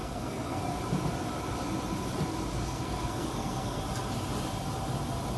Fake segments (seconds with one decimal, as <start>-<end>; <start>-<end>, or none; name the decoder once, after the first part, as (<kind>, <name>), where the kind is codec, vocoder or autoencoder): 0.0-0.6 (codec, SNAC); 2.6-3.8